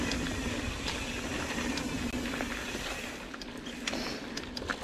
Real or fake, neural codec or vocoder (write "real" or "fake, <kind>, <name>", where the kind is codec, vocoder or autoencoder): real